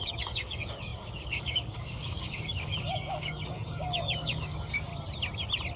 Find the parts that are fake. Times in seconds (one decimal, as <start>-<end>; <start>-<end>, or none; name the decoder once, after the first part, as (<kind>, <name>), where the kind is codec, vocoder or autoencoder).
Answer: 0.0-4.9 (codec, DAC)